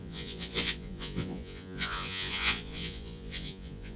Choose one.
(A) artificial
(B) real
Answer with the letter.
A